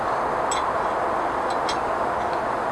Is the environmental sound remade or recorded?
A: recorded